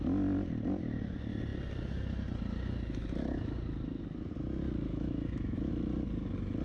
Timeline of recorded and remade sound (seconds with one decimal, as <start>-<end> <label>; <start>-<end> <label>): 0.0-4.9 recorded; 4.9-5.7 remade; 5.7-6.6 recorded